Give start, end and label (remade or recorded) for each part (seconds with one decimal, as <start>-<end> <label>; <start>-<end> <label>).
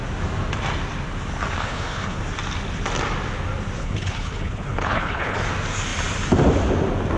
0.0-1.6 recorded; 1.6-2.2 remade; 2.2-3.8 recorded; 3.8-5.4 remade; 5.4-7.2 recorded